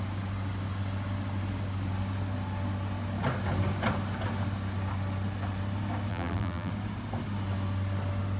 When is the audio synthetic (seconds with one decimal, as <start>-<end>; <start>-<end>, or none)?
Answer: 6.1-6.7